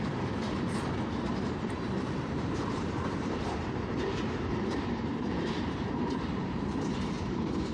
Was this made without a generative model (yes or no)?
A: no